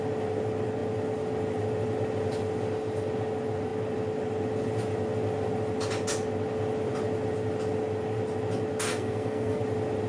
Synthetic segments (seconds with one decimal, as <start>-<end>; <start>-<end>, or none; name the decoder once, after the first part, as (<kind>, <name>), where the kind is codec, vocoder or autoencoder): 8.9-9.6 (codec, SNAC)